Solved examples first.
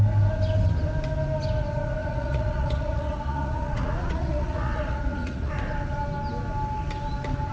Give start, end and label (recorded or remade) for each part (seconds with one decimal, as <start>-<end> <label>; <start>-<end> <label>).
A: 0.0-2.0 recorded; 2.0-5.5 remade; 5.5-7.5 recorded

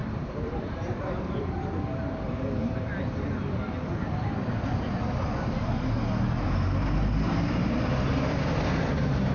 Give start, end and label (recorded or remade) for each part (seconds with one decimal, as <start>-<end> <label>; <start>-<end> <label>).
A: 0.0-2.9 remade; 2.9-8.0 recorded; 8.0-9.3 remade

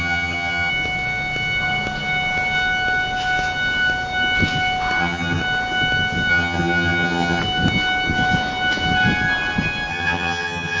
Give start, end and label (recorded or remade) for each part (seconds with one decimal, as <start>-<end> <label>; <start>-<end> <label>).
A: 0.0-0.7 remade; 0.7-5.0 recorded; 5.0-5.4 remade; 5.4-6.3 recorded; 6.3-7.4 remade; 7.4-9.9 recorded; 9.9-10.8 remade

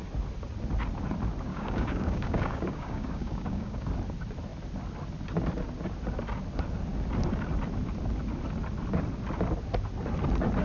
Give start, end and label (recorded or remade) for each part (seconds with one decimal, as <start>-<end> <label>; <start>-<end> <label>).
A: 0.0-1.5 recorded; 1.5-3.9 remade; 3.9-10.6 recorded

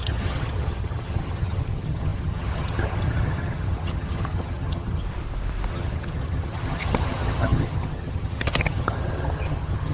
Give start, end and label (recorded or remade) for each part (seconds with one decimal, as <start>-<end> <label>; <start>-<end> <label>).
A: 0.0-5.0 remade; 5.0-5.7 recorded; 5.7-9.9 remade

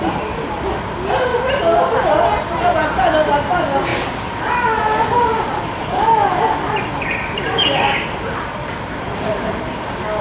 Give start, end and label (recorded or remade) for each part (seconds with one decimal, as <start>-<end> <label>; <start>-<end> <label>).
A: 0.0-3.9 recorded; 3.9-8.0 remade; 8.0-8.6 recorded; 8.6-9.7 remade; 9.7-10.2 recorded

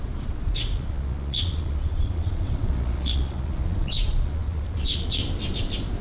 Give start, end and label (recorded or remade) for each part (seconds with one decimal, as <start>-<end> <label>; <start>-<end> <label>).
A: 0.0-5.2 remade; 5.2-6.0 recorded